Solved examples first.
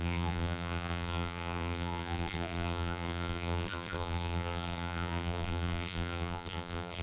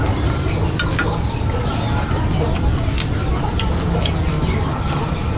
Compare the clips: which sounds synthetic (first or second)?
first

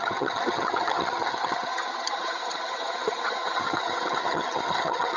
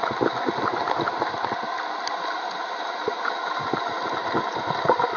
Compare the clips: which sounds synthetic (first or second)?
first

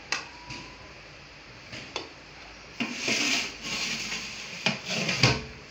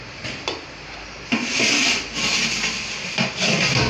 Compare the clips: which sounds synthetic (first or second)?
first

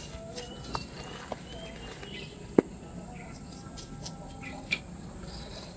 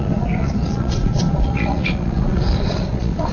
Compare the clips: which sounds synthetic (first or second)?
second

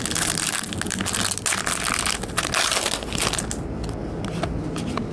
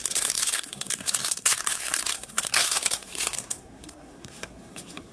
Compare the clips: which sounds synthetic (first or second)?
second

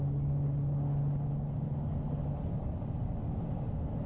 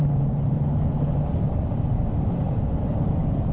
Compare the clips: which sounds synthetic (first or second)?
second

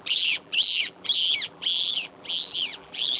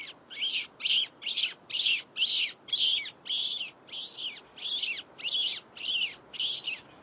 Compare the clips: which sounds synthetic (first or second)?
first